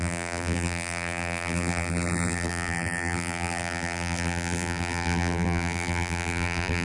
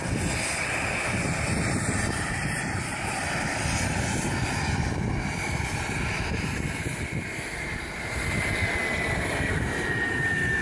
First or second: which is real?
second